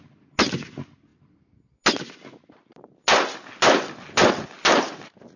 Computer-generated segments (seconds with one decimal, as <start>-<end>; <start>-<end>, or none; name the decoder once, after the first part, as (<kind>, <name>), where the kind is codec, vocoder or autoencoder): none